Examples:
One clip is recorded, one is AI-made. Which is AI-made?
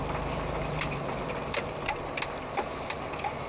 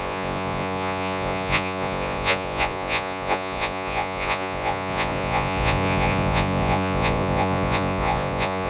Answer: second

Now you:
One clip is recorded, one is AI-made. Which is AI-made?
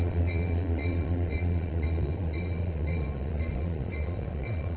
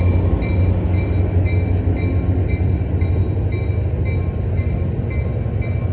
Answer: first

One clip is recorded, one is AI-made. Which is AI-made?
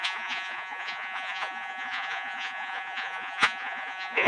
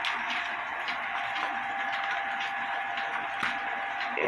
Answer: first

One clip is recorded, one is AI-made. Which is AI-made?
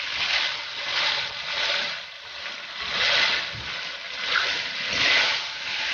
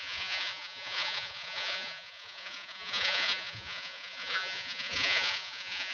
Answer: second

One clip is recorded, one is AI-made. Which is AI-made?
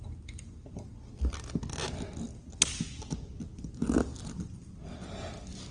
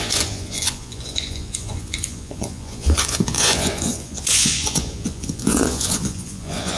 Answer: second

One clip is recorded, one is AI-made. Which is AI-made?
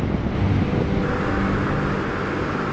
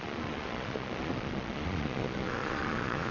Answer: second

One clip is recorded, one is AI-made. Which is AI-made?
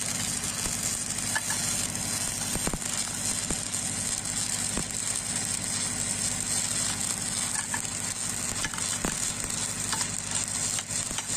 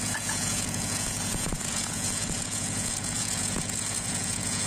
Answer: second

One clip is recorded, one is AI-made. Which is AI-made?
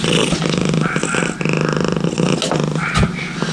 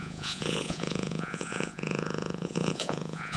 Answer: second